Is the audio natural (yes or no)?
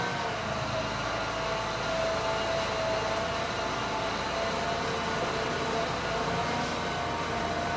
yes